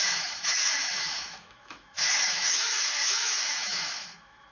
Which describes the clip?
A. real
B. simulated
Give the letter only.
B